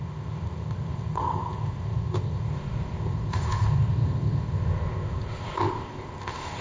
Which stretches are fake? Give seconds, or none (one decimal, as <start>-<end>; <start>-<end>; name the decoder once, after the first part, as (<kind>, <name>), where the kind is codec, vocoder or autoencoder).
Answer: 0.0-6.6 (codec, ZipCodec)